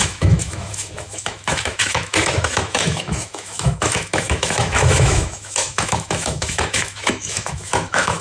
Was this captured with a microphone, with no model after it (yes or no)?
no